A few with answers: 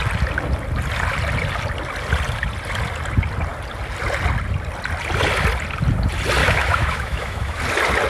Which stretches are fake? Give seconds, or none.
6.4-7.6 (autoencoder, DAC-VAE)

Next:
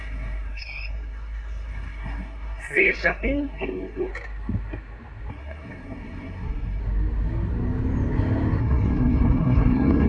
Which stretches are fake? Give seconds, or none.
0.0-4.1 (codec, SNAC); 5.3-6.8; 8.6-10.1